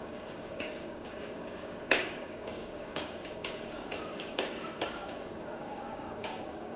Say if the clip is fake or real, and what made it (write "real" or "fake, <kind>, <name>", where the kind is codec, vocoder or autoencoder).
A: fake, codec, DAC